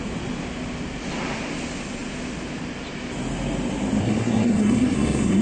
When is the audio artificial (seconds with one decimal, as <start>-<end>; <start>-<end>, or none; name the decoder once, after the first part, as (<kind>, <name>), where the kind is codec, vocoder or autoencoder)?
4.0-5.4 (codec, SNAC)